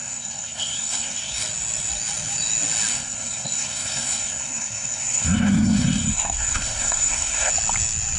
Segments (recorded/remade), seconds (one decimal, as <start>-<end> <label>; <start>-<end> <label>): 0.0-1.4 remade; 1.4-2.9 recorded; 2.9-7.5 remade; 7.5-8.2 recorded